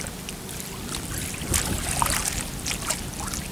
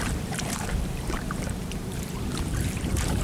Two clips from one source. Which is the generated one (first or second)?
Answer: second